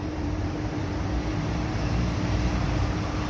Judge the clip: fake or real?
fake